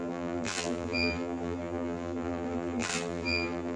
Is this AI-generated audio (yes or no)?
yes